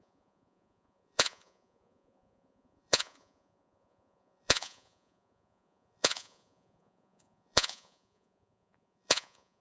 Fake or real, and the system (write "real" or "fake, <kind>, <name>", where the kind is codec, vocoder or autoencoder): fake, vocoder, Vocos